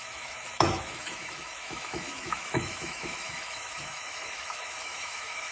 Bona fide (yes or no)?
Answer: no